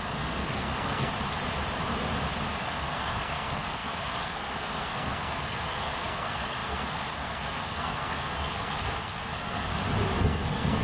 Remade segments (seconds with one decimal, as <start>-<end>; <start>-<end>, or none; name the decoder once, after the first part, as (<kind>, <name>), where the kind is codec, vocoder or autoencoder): 0.0-1.1 (codec, SNAC); 2.6-9.7; 10.2-10.8